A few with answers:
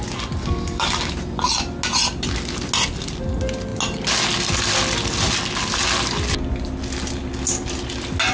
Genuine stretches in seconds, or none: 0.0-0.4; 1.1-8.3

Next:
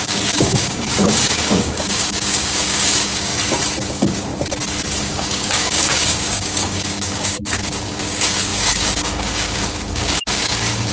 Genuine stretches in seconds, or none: 3.3-3.9; 4.3-5.0

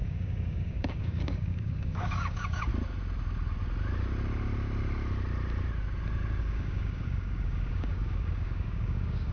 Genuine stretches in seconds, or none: 2.7-6.4

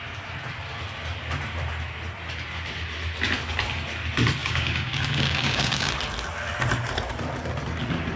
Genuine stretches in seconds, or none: 0.0-4.4; 5.9-8.2

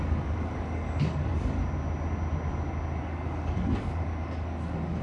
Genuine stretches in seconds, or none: 1.6-3.0